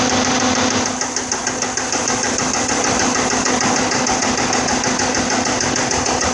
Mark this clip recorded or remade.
recorded